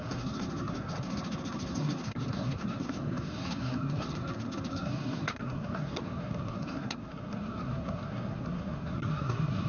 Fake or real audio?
fake